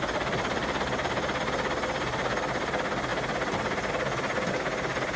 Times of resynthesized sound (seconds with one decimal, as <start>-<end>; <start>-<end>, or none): none